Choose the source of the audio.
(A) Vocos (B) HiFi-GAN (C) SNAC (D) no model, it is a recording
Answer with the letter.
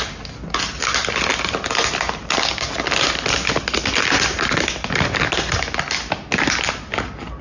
D